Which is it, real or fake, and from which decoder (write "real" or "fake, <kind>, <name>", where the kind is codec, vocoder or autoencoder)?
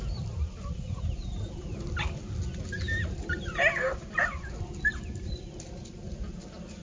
real